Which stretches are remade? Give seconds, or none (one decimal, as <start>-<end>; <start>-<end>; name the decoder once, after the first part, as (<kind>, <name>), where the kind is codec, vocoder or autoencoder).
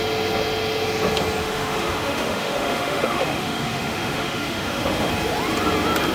1.4-5.1 (autoencoder, DAC-VAE)